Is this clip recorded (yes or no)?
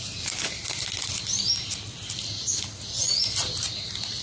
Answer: no